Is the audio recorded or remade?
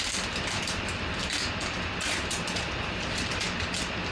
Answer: remade